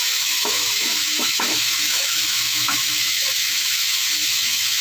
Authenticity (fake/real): fake